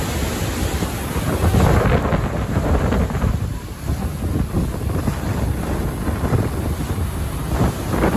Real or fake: real